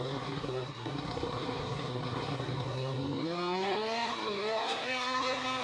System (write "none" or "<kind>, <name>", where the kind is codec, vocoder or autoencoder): codec, SNAC